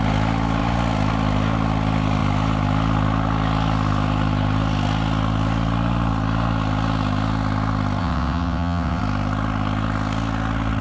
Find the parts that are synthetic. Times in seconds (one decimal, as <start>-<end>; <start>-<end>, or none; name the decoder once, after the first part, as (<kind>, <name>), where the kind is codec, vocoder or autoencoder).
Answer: 8.0-9.0 (vocoder, WaveNeXt)